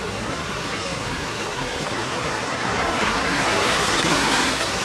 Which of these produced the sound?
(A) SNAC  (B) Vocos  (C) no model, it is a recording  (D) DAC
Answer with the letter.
A